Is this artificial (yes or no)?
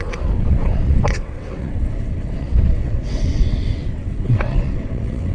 yes